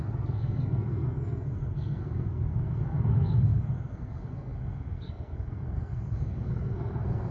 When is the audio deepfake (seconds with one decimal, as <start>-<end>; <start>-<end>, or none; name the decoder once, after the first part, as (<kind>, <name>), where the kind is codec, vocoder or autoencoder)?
0.0-7.3 (codec, SNAC)